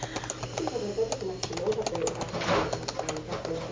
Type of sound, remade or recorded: recorded